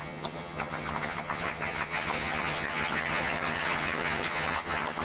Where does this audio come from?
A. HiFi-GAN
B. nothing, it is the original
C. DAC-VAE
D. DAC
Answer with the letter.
A